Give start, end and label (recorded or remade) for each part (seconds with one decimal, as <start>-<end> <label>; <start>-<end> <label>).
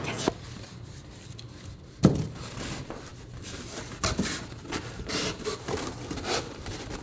0.0-7.0 recorded